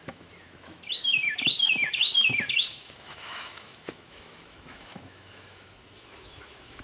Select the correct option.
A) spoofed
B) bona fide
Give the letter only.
A